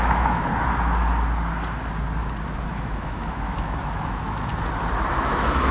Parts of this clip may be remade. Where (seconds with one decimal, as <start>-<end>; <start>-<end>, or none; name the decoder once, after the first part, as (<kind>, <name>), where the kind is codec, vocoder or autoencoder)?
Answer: 0.0-0.5 (autoencoder, DAC-VAE); 2.7-4.5; 5.1-5.7